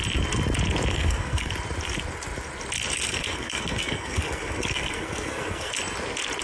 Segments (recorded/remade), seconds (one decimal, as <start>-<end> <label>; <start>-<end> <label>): 0.0-0.9 recorded; 0.9-1.5 remade; 1.5-2.9 recorded; 2.9-5.7 remade; 5.7-6.4 recorded

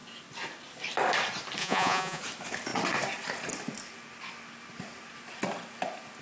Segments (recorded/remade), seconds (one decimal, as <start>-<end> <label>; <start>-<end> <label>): 0.0-1.6 recorded; 1.6-2.2 remade; 2.2-6.2 recorded

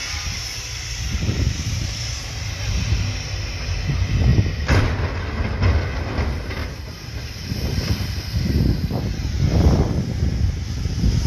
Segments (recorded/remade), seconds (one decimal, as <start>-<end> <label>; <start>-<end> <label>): 0.0-1.7 remade; 1.7-4.3 recorded; 4.3-5.0 remade; 5.0-6.6 recorded; 6.6-9.0 remade; 9.0-11.3 recorded